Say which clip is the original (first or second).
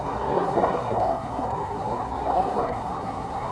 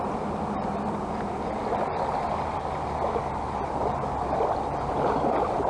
second